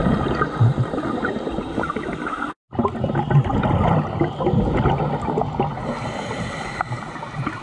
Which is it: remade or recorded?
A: recorded